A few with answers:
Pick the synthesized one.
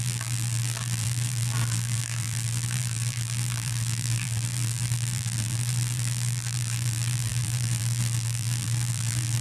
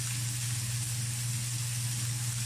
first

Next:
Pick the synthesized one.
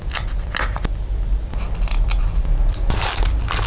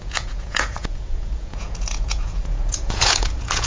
second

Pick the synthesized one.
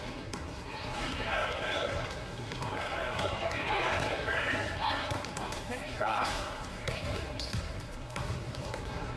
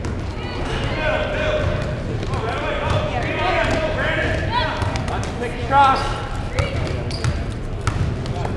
first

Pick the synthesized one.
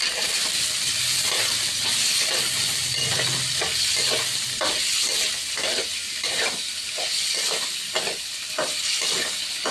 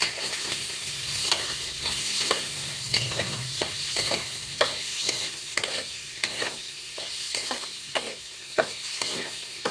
second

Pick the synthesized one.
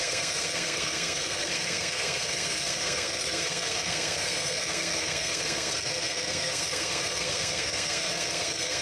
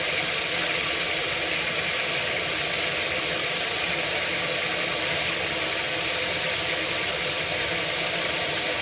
first